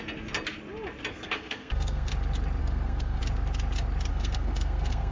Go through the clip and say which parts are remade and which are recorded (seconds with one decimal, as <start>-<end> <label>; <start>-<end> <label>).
0.0-1.1 recorded; 1.1-2.1 remade; 2.1-2.6 recorded; 2.6-3.2 remade; 3.2-4.1 recorded; 4.1-5.1 remade